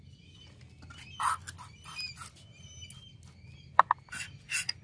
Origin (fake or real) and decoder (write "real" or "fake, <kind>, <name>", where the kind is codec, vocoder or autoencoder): real